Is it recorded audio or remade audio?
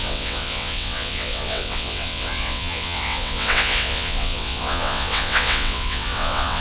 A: remade